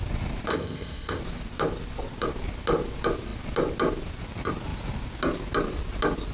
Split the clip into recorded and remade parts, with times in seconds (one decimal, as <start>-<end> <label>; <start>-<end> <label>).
0.0-0.5 recorded; 0.5-1.2 remade; 1.2-6.3 recorded